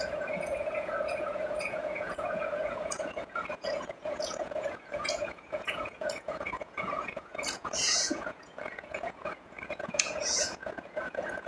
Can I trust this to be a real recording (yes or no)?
no